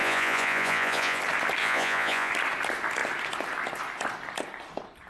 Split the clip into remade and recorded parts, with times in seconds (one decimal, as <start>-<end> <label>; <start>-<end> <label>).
0.0-1.2 remade; 1.2-1.6 recorded; 1.6-2.3 remade; 2.3-5.1 recorded

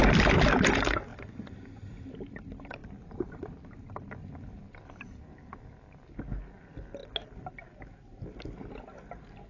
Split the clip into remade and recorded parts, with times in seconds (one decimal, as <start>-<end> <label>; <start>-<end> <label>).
0.0-1.1 recorded; 1.1-2.1 remade; 2.1-2.8 recorded; 2.8-5.5 remade; 5.5-9.5 recorded